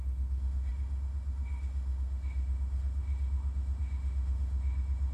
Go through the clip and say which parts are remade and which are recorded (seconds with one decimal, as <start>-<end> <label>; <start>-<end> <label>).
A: 0.0-5.1 remade